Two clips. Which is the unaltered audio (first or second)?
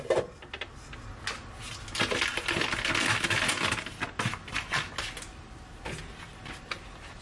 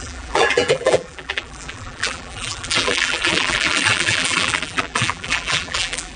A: first